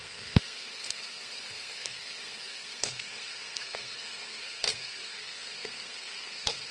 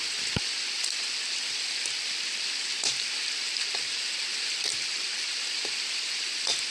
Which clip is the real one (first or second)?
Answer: second